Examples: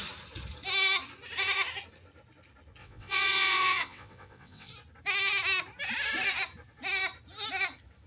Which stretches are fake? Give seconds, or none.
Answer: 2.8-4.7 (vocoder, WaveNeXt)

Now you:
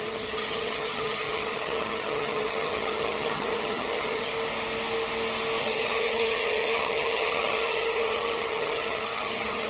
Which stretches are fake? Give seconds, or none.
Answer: 0.0-4.3 (vocoder, HiFi-GAN); 5.6-9.7

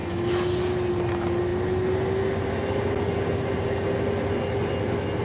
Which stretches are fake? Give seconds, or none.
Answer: none

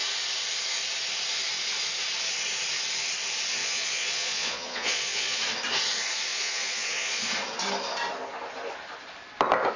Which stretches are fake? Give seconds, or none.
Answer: 3.6-5.4 (vocoder, Vocos); 6.3-7.2

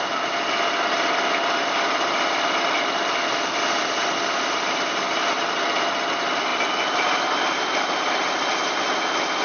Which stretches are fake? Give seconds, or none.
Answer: none

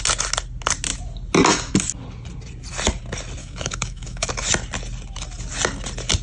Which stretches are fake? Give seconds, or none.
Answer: 3.4-4.3 (autoencoder, DAC-VAE)

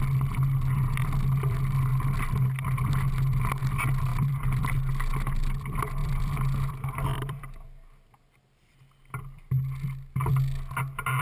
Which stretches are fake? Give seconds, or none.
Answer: 4.1-4.9 (vocoder, BigVGAN v2); 6.0-7.5

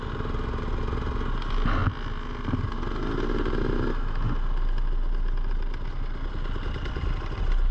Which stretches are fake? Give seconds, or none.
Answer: none